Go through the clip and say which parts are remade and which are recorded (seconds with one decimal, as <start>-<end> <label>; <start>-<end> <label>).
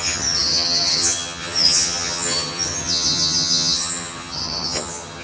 0.0-5.2 remade